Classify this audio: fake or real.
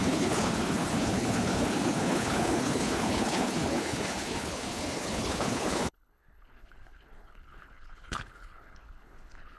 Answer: fake